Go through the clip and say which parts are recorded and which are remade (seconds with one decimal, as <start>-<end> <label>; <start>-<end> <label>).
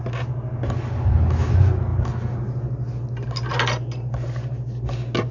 0.0-5.3 recorded